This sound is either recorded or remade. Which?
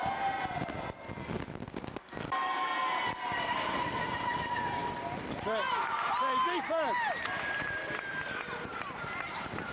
recorded